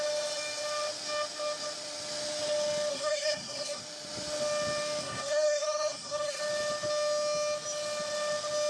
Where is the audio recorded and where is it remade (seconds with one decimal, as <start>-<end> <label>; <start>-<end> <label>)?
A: 0.0-2.9 recorded; 2.9-3.8 remade; 3.8-5.0 recorded; 5.0-6.4 remade; 6.4-8.7 recorded